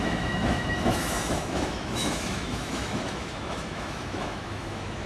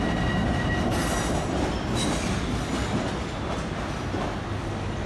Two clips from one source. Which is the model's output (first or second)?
first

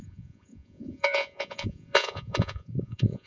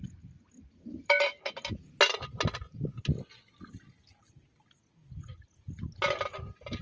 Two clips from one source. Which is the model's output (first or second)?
first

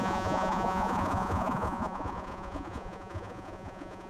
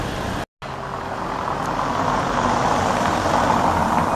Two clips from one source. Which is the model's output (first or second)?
first